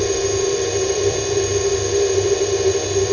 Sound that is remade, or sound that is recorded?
remade